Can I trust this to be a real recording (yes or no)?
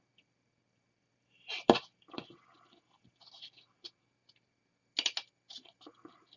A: yes